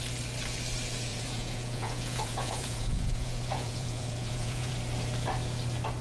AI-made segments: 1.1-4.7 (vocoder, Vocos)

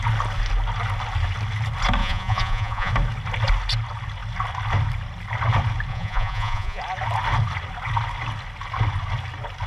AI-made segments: 2.0-2.9 (vocoder, Vocos); 5.9-6.8

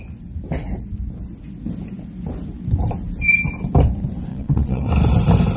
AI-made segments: 4.3-4.9 (vocoder, Vocos)

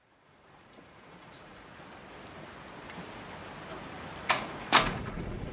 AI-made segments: 0.0-1.7 (vocoder, Vocos); 4.2-5.5

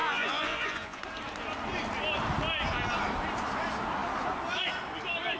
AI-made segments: 0.0-1.0 (vocoder, Vocos)

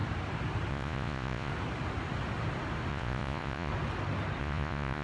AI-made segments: 0.7-1.5 (vocoder, Vocos); 2.9-3.7; 4.4-5.0

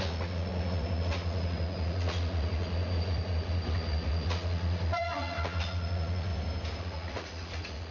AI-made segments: 0.0-6.3 (vocoder, Vocos); 6.8-7.9

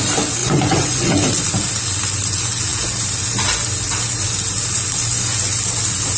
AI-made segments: 0.4-1.1 (vocoder, Vocos)